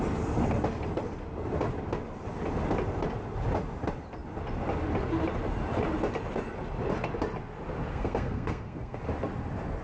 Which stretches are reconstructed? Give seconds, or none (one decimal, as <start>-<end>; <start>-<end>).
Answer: 7.9-9.0